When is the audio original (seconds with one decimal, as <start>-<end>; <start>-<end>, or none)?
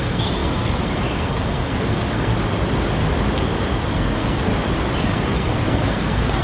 2.3-3.9; 4.5-5.0